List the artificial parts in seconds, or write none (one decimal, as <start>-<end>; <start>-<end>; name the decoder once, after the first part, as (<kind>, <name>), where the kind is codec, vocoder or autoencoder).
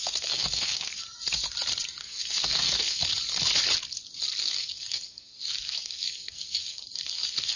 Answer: 0.0-1.0 (codec, SNAC); 2.0-3.0; 4.4-7.6